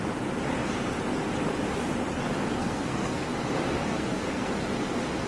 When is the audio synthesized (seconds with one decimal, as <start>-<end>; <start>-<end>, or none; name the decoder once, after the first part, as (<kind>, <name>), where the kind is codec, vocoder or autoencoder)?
2.6-3.3 (codec, SNAC); 3.8-4.5